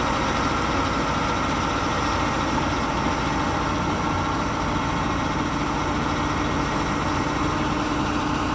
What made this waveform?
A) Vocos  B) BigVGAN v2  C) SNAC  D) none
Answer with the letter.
D